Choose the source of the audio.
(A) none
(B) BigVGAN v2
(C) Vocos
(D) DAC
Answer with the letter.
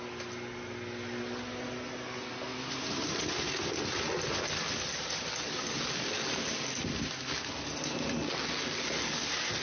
A